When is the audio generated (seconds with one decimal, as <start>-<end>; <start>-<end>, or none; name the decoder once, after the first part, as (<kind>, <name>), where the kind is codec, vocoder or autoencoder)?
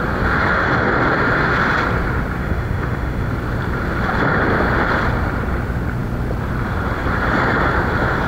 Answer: 2.4-3.3 (autoencoder, DAC-VAE)